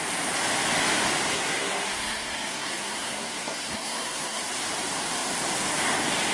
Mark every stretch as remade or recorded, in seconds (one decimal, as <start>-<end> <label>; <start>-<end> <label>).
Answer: 0.0-1.3 recorded; 1.3-4.4 remade; 4.4-6.3 recorded